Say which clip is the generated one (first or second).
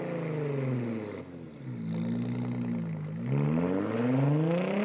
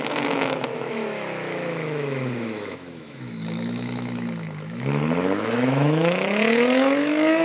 second